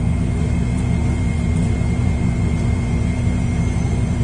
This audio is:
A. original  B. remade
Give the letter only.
B